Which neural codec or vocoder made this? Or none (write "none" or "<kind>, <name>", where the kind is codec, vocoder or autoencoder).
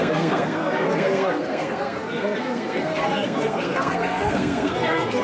codec, SNAC